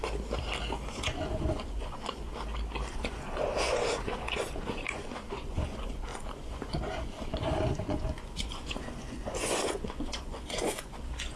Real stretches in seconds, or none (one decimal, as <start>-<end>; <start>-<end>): 0.0-0.9; 2.3-2.9